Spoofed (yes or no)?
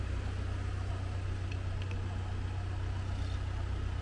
no